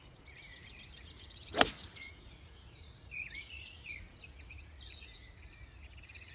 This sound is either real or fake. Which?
fake